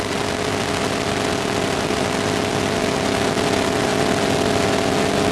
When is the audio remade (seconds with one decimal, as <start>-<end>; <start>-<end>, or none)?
none